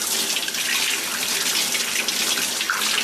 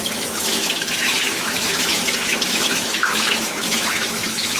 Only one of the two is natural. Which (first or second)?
first